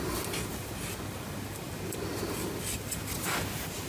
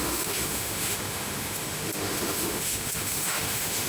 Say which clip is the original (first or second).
first